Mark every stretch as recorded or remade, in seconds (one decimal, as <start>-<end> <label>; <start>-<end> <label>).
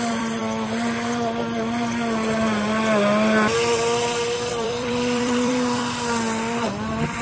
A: 0.0-0.4 remade; 0.4-4.5 recorded; 4.5-5.8 remade; 5.8-7.2 recorded